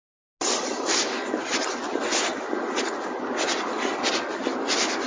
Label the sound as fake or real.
real